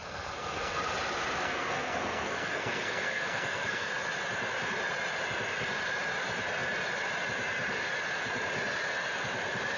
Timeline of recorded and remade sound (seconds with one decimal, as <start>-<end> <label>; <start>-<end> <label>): 0.0-0.8 remade; 0.8-1.4 recorded; 1.4-3.9 remade; 3.9-9.8 recorded